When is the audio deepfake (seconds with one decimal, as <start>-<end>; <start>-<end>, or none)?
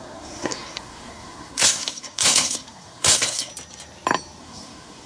0.0-3.5; 4.4-5.1